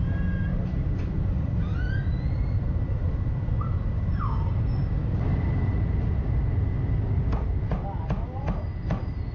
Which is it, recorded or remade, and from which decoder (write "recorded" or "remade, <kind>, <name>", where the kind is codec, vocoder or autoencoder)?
recorded